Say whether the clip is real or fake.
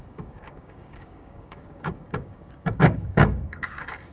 fake